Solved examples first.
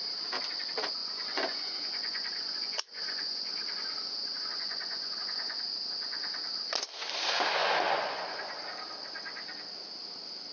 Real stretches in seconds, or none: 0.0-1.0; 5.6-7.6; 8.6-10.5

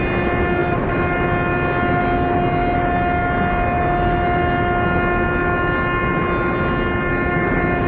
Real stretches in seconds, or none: 0.0-7.9

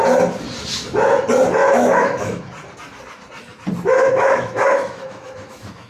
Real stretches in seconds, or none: 0.0-1.6; 2.4-4.0

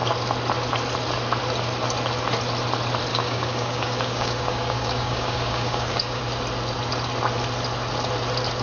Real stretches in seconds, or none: 0.0-3.1; 6.2-8.6

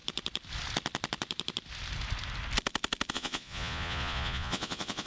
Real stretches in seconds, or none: 0.0-3.1

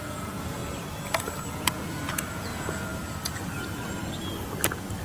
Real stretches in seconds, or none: 0.6-1.5; 2.9-5.0

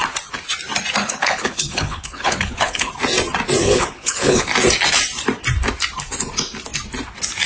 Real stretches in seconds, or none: 0.0-1.0; 2.9-3.6; 4.5-7.5